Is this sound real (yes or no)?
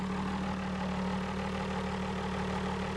yes